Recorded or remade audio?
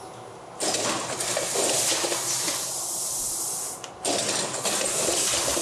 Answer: recorded